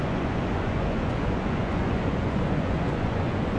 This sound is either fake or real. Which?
fake